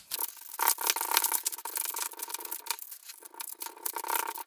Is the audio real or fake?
real